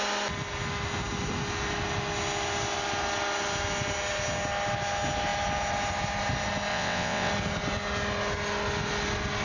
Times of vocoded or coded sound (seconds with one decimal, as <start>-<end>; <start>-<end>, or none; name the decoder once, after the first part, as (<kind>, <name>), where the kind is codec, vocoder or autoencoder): 6.7-7.3 (vocoder, WaveNeXt)